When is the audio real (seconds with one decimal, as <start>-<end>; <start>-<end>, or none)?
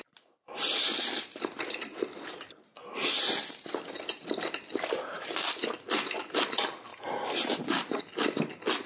0.0-6.9; 8.0-8.9